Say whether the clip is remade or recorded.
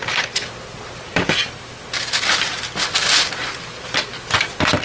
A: recorded